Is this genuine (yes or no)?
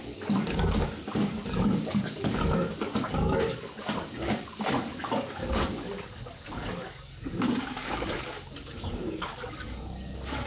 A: no